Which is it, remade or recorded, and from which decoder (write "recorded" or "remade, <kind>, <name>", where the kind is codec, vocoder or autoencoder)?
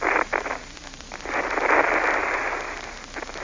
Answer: recorded